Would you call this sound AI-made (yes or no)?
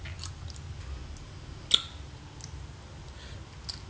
no